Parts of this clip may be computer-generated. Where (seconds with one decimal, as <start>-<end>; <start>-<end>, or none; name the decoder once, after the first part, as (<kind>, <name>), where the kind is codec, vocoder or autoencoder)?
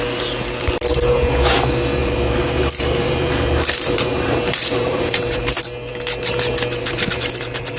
2.0-5.5 (vocoder, BigVGAN v2)